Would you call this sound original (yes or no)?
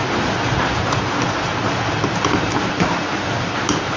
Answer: yes